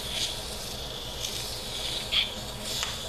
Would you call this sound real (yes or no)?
yes